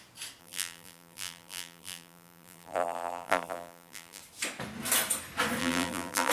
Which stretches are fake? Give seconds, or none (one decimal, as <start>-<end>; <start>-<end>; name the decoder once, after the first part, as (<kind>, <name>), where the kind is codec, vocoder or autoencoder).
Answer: 0.4-4.2 (vocoder, BigVGAN v2); 5.6-6.3